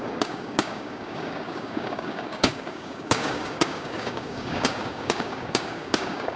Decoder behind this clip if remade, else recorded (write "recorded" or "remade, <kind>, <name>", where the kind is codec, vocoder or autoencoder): remade, codec, DAC